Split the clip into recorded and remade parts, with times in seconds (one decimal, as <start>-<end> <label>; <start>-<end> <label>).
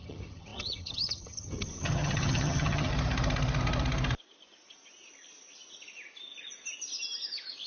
0.0-2.9 remade; 2.9-7.7 recorded